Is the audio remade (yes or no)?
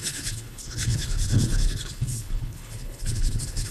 yes